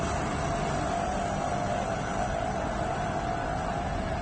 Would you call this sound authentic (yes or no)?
yes